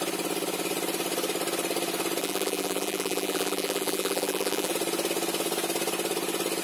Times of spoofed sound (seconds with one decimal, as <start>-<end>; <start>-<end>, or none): 2.2-4.7